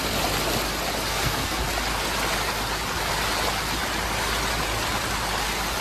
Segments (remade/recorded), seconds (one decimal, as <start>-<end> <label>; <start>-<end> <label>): 0.0-1.1 recorded; 1.1-1.6 remade; 1.6-5.8 recorded